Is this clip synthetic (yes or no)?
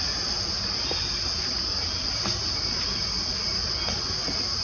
no